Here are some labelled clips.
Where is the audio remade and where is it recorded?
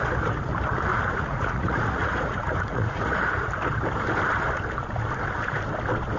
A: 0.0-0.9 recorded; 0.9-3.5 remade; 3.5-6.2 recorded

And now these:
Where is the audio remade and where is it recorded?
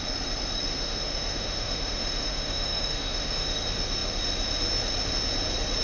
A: 0.0-0.7 recorded; 0.7-3.6 remade; 3.6-5.8 recorded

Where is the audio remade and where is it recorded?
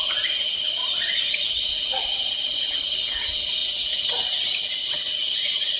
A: 0.0-5.8 recorded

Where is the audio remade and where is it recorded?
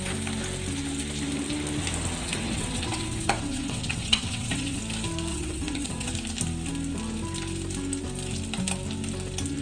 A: 0.0-2.2 recorded; 2.2-4.8 remade; 4.8-5.3 recorded; 5.3-6.1 remade; 6.1-9.6 recorded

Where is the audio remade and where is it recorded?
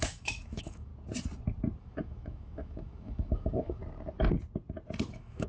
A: 0.0-0.9 remade; 0.9-1.8 recorded; 1.8-3.8 remade; 3.8-5.1 recorded; 5.1-5.5 remade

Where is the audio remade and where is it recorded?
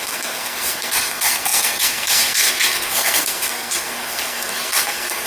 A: 0.0-5.3 remade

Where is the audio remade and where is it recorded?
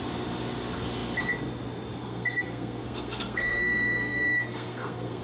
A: 0.0-2.0 recorded; 2.0-5.2 remade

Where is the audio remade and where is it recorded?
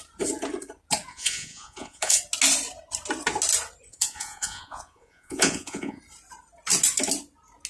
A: 0.0-1.1 recorded; 1.1-2.2 remade; 2.2-3.9 recorded; 3.9-6.0 remade; 6.0-7.7 recorded